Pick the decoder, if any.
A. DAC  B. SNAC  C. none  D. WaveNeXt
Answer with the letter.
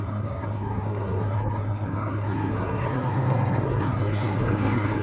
B